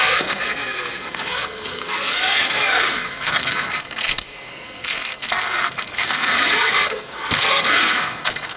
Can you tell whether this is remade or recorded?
remade